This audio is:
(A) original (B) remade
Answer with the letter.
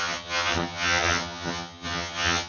B